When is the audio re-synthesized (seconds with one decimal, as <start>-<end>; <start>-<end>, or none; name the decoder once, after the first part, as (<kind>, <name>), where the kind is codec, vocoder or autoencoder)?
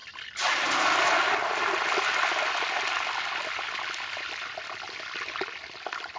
none